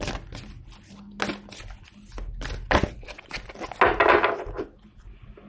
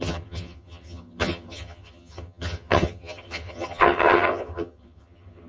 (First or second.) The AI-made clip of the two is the second